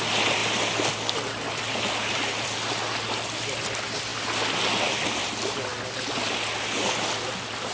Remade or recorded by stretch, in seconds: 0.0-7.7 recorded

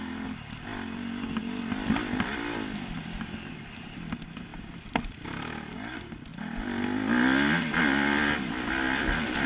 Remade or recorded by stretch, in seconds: 0.0-9.5 recorded

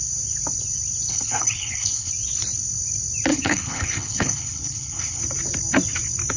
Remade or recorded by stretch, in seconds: 0.0-1.1 recorded; 1.1-2.1 remade; 2.1-3.3 recorded; 3.3-5.2 remade; 5.2-6.4 recorded

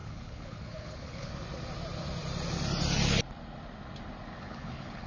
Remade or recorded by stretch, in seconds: 0.0-1.3 remade; 1.3-4.4 recorded; 4.4-5.1 remade

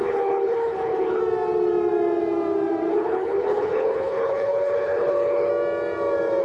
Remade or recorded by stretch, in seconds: 0.0-1.2 remade; 1.2-2.9 recorded; 2.9-5.5 remade; 5.5-6.4 recorded

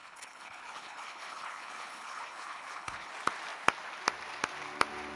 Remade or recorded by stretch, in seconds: 0.0-3.1 remade; 3.1-5.2 recorded

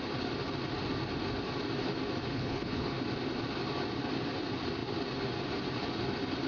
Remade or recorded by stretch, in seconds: 0.0-2.3 recorded; 2.3-3.0 remade; 3.0-6.5 recorded